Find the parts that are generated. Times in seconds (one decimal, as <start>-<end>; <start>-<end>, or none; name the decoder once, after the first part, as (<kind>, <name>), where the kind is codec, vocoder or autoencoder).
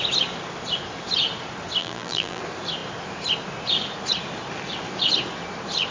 1.8-2.4 (vocoder, BigVGAN v2)